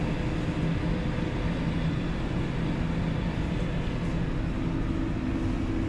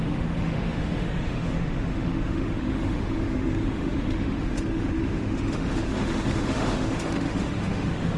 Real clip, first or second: first